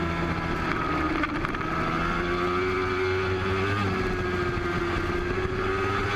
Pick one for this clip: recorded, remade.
recorded